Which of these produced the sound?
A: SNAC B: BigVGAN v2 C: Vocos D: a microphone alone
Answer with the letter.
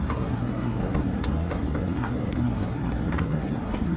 A